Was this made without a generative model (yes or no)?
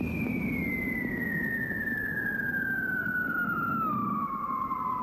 yes